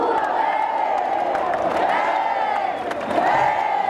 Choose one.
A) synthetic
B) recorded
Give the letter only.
B